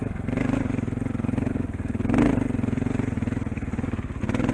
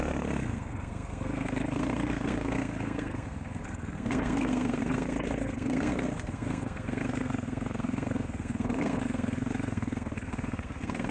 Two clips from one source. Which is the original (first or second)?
first